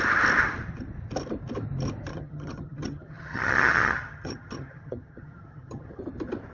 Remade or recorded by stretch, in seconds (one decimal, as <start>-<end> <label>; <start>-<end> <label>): 0.0-2.1 recorded; 2.1-6.0 remade; 6.0-6.5 recorded